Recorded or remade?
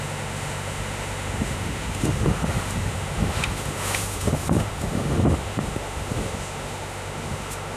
remade